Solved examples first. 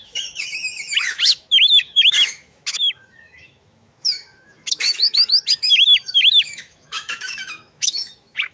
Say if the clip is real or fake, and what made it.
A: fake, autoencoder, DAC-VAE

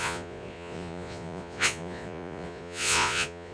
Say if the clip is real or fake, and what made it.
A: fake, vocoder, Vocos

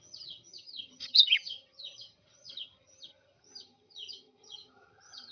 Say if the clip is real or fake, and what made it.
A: fake, vocoder, HiFi-GAN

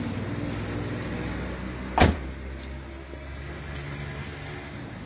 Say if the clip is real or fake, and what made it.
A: real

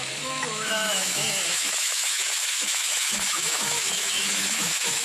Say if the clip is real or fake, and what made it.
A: fake, autoencoder, DAC-VAE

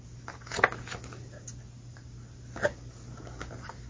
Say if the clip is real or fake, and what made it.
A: real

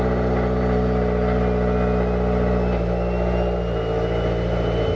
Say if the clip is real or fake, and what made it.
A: real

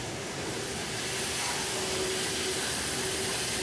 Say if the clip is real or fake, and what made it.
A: real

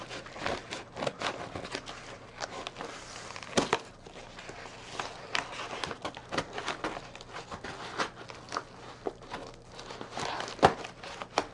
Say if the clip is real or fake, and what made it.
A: real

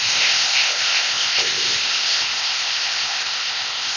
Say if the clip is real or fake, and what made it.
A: fake, codec, ZipCodec